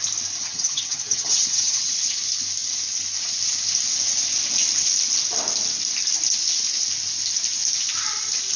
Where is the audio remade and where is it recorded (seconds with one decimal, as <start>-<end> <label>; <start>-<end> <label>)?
0.0-0.4 recorded; 0.4-2.2 remade; 2.2-8.6 recorded